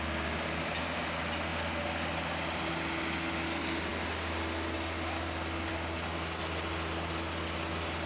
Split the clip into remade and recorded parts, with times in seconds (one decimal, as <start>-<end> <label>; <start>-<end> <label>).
0.0-8.1 recorded